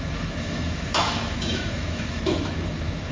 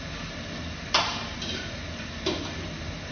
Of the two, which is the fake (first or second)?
first